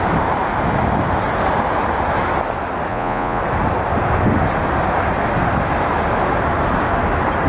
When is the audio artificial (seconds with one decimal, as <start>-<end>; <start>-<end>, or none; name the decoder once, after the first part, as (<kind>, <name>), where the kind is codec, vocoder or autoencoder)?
2.9-3.4 (vocoder, Vocos)